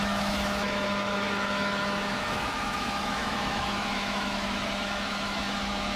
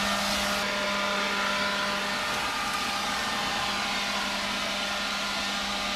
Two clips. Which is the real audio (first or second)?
second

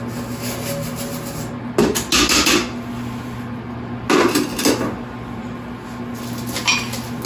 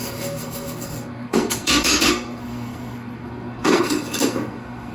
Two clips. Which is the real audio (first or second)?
first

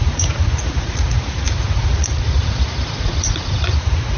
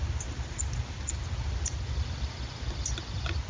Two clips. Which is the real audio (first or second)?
second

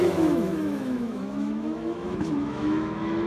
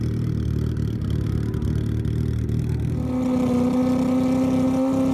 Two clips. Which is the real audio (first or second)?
second